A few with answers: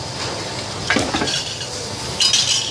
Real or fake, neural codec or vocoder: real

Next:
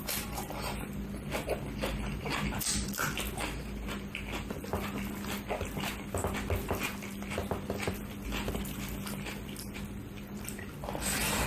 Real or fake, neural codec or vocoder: real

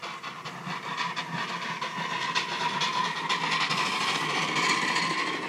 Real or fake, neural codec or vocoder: real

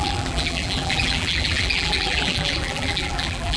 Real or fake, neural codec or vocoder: fake, vocoder, BigVGAN v2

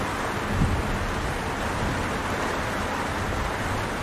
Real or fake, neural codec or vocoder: real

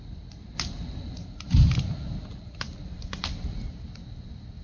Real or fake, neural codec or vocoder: fake, vocoder, BigVGAN v2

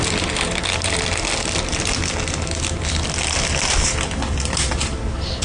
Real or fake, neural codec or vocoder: fake, vocoder, BigVGAN v2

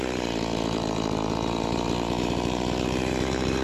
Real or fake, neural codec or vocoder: fake, vocoder, BigVGAN v2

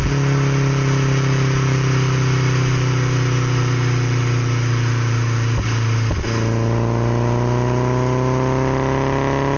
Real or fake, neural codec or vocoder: real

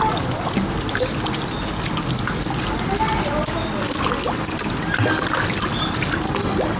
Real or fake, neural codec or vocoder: real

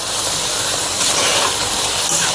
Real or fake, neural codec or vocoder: fake, vocoder, BigVGAN v2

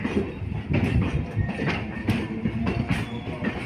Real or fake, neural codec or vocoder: real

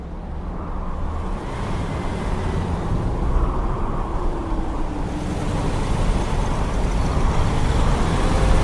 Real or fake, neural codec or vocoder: real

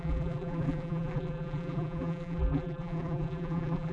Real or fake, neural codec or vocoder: fake, vocoder, BigVGAN v2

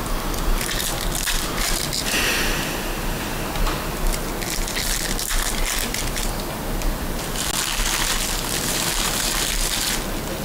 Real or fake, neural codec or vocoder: real